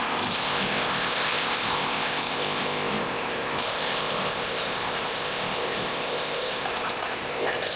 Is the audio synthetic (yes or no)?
yes